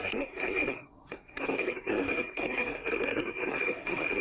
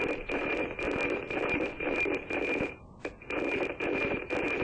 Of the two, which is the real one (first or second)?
second